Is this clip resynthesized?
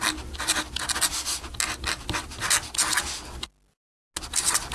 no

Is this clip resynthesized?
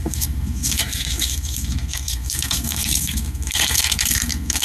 yes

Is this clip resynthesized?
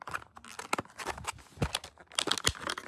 no